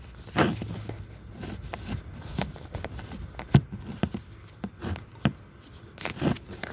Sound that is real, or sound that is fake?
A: real